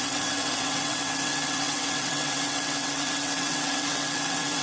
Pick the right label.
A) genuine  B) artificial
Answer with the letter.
B